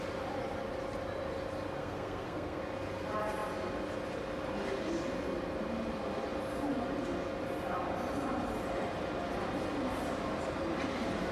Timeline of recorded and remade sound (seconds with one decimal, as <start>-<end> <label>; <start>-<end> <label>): 0.0-1.8 recorded; 1.8-2.6 remade; 2.6-11.3 recorded